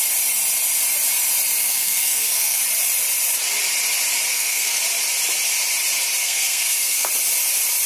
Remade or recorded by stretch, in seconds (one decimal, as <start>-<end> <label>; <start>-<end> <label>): 0.0-1.6 recorded; 1.6-2.6 remade; 2.6-4.3 recorded; 4.3-4.8 remade; 4.8-6.2 recorded; 6.2-7.1 remade; 7.1-7.9 recorded